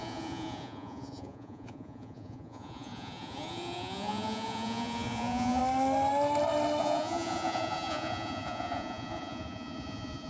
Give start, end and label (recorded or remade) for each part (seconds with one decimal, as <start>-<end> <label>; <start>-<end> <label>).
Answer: 0.0-5.6 remade; 5.6-6.8 recorded; 6.8-10.3 remade